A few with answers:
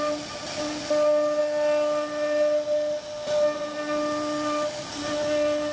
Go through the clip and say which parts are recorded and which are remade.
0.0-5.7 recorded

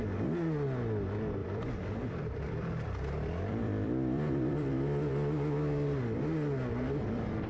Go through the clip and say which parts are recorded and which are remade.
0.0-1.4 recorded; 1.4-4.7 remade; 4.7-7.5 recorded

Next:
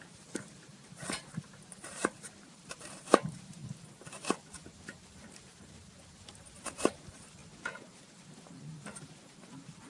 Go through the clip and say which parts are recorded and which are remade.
0.0-3.6 remade; 3.6-5.1 recorded; 5.1-7.4 remade; 7.4-8.9 recorded; 8.9-9.9 remade

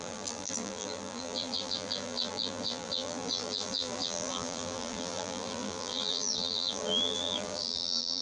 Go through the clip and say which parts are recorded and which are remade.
0.0-8.2 remade

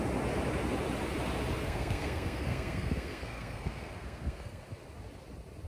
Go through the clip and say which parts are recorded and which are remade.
0.0-1.6 recorded; 1.6-4.6 remade; 4.6-5.7 recorded

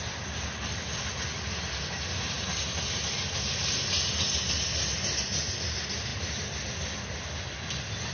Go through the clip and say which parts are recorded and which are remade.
0.0-8.1 recorded

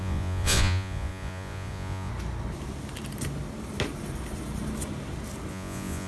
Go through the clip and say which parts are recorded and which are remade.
0.0-2.1 remade; 2.1-5.5 recorded; 5.5-6.1 remade